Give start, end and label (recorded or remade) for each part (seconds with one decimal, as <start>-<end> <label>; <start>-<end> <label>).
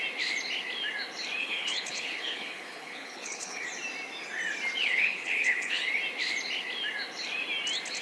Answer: 0.0-1.4 recorded; 1.4-3.6 remade; 3.6-4.8 recorded; 4.8-5.9 remade; 5.9-8.0 recorded